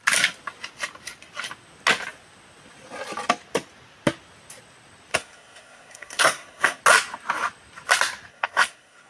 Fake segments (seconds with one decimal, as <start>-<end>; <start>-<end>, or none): 5.1-6.8; 8.3-9.1